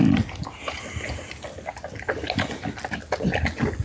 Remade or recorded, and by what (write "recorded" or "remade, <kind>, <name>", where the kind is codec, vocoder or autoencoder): recorded